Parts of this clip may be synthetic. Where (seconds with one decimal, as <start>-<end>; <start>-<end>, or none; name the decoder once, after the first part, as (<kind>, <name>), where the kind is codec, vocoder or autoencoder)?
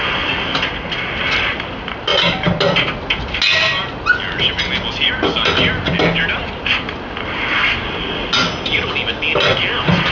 none